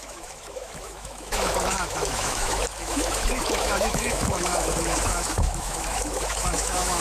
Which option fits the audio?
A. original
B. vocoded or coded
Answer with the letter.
B